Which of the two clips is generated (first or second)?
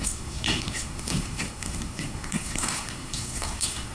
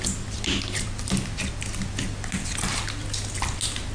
first